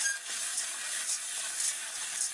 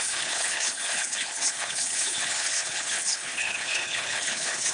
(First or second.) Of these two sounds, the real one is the first